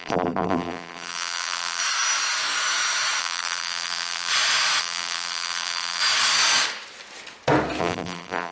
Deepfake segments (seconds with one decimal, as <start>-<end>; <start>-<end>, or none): 0.0-1.8; 3.2-4.3; 4.8-6.0; 7.8-8.5